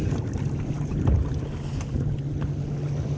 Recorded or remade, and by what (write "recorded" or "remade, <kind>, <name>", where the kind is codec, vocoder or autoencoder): recorded